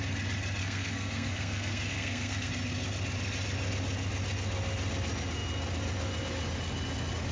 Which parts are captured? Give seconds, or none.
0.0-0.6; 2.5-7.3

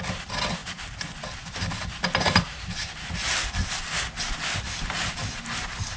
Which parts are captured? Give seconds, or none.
0.0-6.0

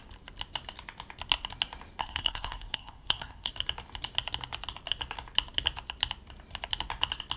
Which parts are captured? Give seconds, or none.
0.0-2.0; 3.5-7.4

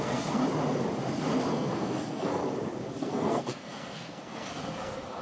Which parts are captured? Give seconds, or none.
0.4-1.5; 2.4-3.0

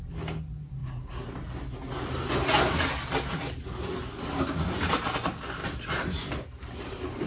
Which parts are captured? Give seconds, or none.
0.0-7.3

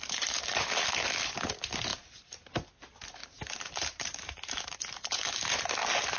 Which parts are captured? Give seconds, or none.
0.0-1.9; 2.7-3.2; 5.7-6.2